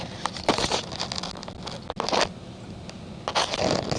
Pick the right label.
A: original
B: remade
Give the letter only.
A